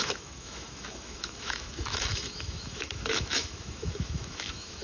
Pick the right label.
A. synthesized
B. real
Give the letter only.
A